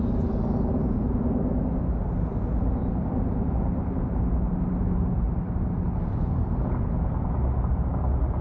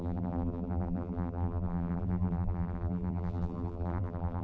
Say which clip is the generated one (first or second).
second